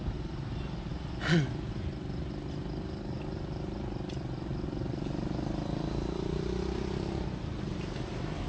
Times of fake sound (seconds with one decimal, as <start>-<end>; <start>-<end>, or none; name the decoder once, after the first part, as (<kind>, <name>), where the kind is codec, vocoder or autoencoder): none